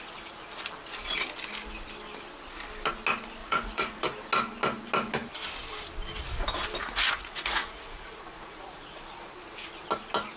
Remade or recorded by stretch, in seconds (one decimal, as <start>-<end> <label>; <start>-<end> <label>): 0.0-3.4 recorded; 3.4-4.0 remade; 4.0-6.8 recorded; 6.8-9.2 remade; 9.2-10.4 recorded